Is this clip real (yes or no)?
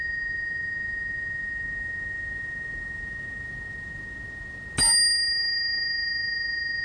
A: yes